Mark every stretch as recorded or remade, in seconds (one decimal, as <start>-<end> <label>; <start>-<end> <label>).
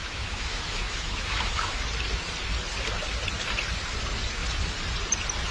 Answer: 0.0-1.8 remade; 1.8-5.5 recorded